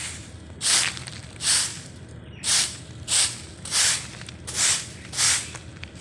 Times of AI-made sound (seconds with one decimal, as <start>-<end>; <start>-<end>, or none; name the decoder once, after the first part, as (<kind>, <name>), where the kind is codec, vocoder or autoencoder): 1.7-2.8 (vocoder, BigVGAN v2)